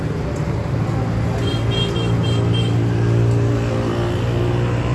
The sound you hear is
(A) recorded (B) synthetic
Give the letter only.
A